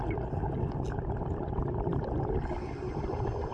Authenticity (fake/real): real